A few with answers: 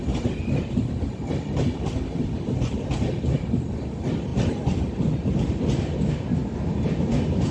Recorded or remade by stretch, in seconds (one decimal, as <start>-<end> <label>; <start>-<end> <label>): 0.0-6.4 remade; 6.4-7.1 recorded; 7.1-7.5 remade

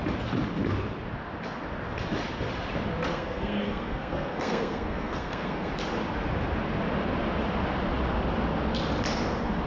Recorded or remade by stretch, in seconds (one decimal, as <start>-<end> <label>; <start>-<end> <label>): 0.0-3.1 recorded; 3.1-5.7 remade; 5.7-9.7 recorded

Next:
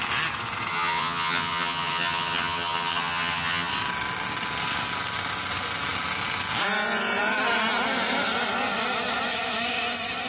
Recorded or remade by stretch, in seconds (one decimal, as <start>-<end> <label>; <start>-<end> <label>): 0.0-0.7 recorded; 0.7-3.7 remade; 3.7-10.3 recorded

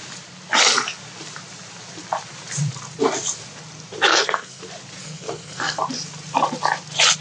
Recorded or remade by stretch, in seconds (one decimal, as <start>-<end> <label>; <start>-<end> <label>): 0.0-4.1 recorded; 4.1-4.6 remade; 4.6-5.0 recorded; 5.0-5.8 remade; 5.8-7.2 recorded